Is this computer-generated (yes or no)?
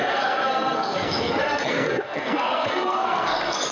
yes